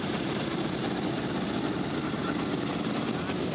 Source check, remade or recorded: recorded